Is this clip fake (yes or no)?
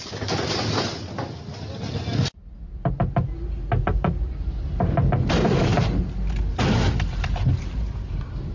no